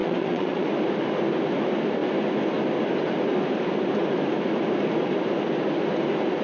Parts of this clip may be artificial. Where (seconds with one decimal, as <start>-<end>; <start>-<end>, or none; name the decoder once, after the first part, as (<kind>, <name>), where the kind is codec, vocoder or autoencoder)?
0.0-0.7 (vocoder, Vocos)